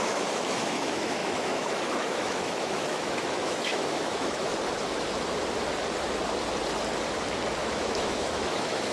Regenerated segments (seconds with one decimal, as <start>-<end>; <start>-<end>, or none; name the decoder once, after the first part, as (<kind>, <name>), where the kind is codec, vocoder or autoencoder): 0.0-4.5 (autoencoder, DAC-VAE); 7.6-8.9